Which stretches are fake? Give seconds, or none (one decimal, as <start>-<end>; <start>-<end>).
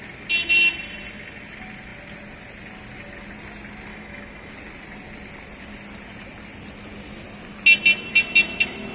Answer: 3.9-4.5